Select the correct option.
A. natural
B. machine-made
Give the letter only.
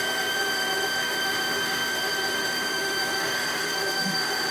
B